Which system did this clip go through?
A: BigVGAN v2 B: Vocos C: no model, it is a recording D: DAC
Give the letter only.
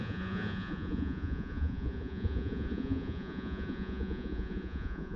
B